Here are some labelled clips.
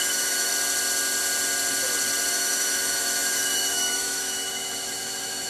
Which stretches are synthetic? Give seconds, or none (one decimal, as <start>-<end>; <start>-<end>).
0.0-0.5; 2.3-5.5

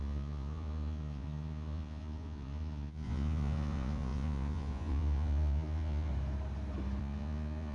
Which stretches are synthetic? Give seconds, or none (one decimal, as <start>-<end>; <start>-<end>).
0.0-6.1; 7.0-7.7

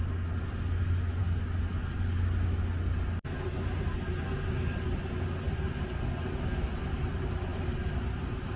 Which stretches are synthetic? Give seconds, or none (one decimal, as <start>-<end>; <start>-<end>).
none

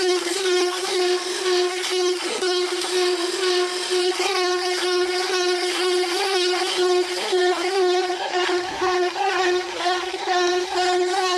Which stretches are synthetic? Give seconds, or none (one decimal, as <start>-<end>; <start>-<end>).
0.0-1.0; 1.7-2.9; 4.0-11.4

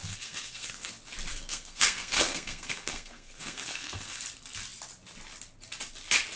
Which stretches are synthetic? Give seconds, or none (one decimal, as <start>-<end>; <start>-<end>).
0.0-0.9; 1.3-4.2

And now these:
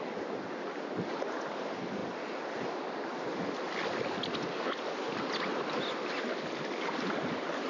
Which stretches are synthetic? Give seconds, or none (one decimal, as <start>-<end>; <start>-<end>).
none

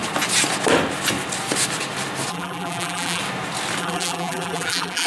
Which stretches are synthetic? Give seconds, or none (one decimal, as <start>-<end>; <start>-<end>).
2.3-3.2; 3.8-5.1